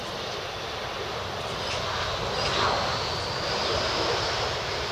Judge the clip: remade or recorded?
recorded